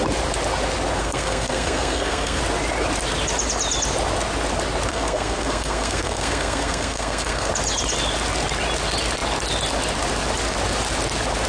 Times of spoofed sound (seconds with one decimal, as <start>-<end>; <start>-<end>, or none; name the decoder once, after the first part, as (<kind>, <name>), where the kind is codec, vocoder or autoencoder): 1.0-2.4 (codec, SNAC); 4.9-7.5